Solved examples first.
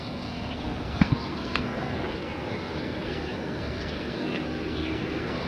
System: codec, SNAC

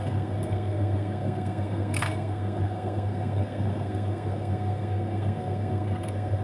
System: codec, SNAC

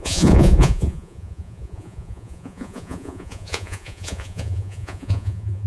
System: vocoder, Vocos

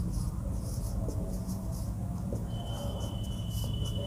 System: none